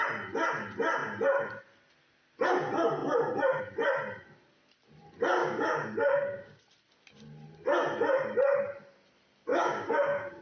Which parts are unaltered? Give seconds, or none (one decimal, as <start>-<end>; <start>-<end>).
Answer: 0.0-5.4; 6.6-9.5